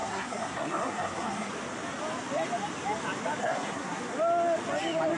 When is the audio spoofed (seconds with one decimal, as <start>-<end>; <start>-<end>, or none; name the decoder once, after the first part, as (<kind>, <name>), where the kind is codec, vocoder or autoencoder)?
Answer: 0.0-1.5 (codec, SNAC); 3.4-4.0